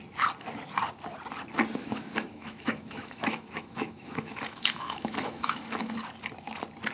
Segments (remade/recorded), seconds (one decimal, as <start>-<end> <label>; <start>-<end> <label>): 0.0-1.8 recorded; 1.8-5.9 remade; 5.9-6.9 recorded